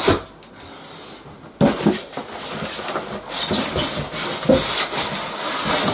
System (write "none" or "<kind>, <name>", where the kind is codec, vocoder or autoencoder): none